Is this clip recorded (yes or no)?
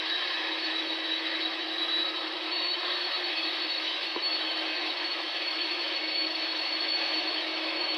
no